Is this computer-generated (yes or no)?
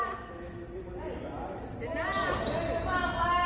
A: no